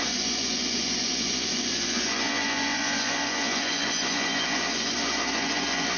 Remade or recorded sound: remade